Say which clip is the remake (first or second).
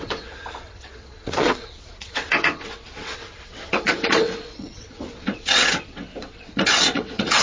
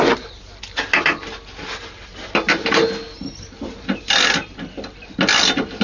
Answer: first